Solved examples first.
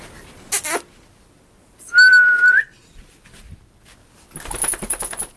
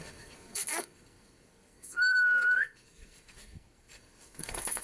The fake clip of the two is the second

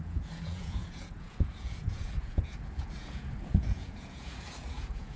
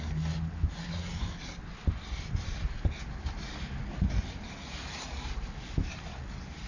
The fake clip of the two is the first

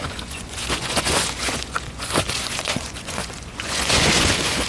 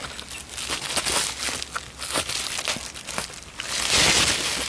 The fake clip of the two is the first